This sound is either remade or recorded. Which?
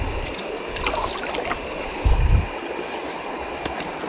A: recorded